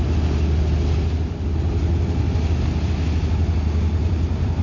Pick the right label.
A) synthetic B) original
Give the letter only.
B